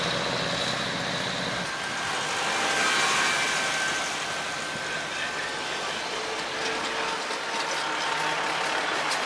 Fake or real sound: real